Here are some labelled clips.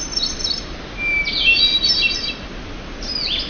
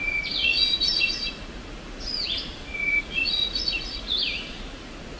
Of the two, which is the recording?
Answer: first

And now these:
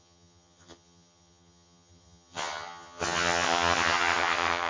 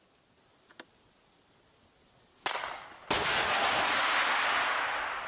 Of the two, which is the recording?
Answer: second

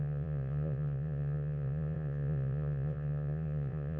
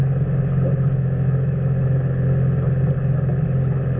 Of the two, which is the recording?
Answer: second